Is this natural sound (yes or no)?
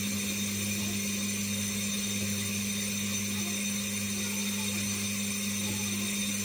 yes